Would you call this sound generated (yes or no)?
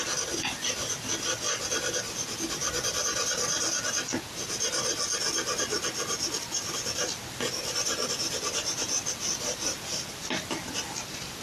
no